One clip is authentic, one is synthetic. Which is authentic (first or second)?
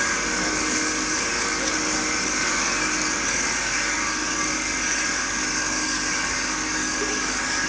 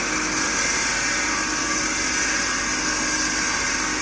second